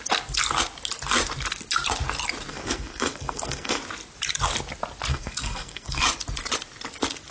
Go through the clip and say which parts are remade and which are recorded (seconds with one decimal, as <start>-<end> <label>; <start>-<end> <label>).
0.0-2.5 recorded; 2.5-3.8 remade; 3.8-5.1 recorded; 5.1-6.0 remade; 6.0-7.3 recorded